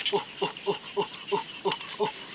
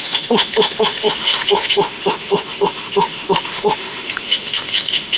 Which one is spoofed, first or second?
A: second